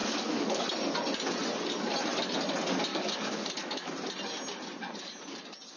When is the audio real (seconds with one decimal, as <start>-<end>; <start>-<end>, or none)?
0.6-2.9; 3.9-5.8